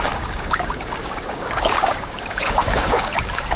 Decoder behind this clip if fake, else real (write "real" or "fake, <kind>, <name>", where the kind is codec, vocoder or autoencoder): fake, codec, DAC